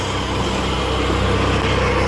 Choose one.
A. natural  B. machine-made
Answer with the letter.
A